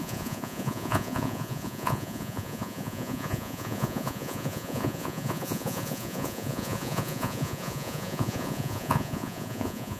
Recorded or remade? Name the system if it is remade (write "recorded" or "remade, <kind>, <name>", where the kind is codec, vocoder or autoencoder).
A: remade, vocoder, Vocos